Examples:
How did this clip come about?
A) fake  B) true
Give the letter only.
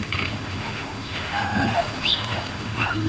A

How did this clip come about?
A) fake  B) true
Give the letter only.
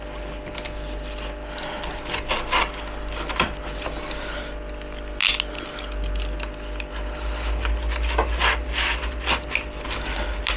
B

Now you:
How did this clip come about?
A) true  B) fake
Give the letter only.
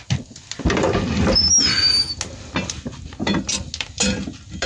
A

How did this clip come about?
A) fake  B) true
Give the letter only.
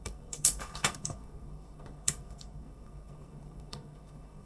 A